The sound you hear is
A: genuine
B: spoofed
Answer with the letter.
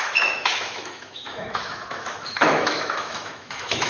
B